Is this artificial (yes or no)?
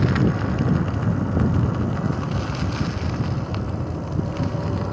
no